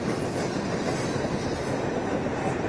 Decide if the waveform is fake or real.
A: real